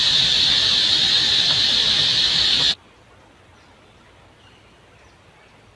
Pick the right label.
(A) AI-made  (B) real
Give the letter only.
B